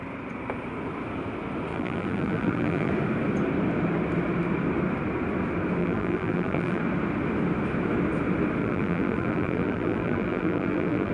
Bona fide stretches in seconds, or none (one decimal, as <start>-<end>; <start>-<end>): 0.0-1.7; 2.9-5.8; 6.8-8.6